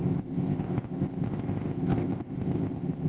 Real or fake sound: fake